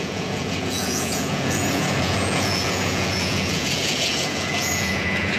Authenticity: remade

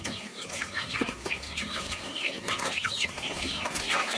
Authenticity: remade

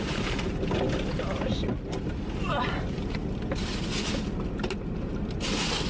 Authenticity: recorded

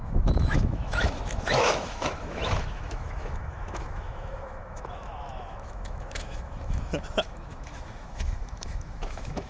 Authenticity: remade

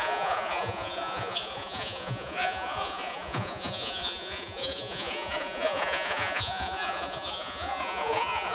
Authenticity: remade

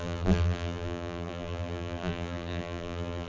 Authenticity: remade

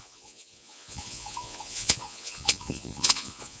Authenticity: remade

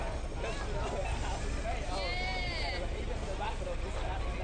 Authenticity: recorded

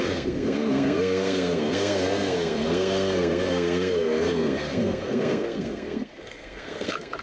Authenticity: remade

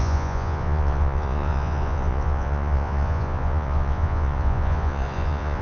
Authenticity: remade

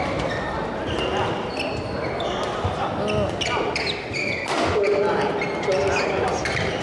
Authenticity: recorded